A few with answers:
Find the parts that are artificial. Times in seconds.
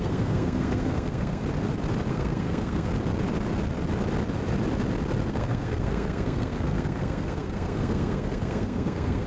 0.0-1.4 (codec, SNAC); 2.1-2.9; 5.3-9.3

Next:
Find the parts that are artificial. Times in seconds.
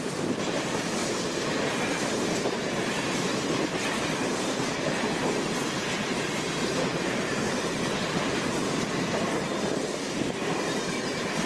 0.0-1.0 (vocoder, BigVGAN v2); 2.4-3.3; 4.9-11.5